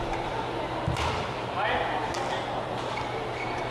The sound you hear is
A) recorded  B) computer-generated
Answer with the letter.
A